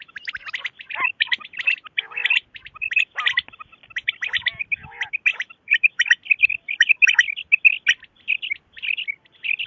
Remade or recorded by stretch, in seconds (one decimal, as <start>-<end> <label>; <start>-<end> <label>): 0.0-5.3 recorded; 5.3-5.9 remade; 5.9-9.7 recorded